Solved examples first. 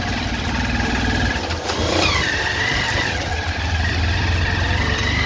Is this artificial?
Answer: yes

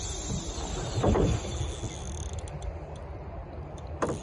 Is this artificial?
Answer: no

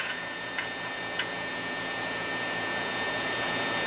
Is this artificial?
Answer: yes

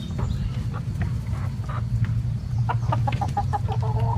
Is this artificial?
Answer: no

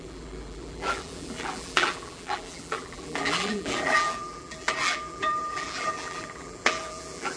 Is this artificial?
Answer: yes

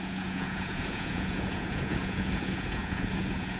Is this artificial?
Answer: yes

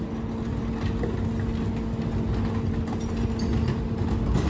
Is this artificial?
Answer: no